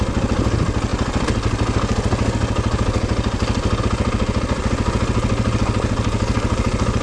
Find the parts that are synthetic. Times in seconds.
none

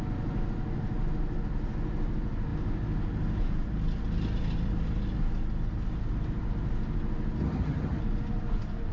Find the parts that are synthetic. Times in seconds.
7.4-8.0 (vocoder, HiFi-GAN)

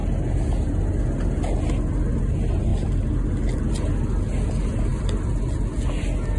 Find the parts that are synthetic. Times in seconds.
none

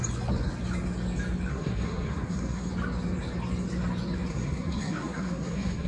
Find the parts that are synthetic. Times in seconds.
1.5-2.7 (codec, SNAC); 4.3-5.9

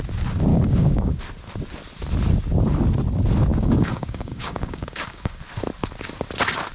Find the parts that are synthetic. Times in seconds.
0.5-1.2 (codec, DAC); 3.5-5.4